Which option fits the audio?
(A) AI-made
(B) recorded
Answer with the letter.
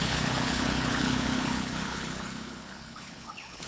A